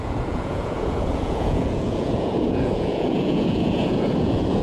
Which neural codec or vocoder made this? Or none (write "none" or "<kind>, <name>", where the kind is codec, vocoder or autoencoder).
vocoder, Vocos